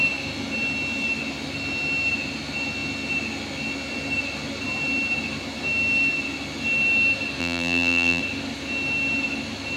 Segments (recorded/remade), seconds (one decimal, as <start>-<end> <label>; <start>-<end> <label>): 0.0-7.4 recorded; 7.4-8.2 remade; 8.2-9.8 recorded